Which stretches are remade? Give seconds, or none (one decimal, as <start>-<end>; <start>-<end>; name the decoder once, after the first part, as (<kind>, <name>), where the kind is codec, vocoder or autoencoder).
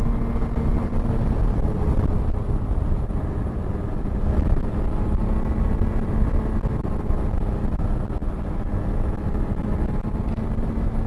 0.7-5.9 (vocoder, BigVGAN v2); 8.2-9.6